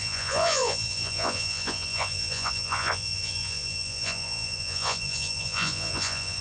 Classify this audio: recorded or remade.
remade